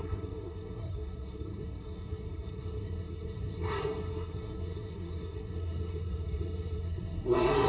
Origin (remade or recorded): remade